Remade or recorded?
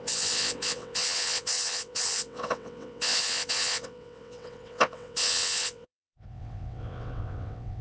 remade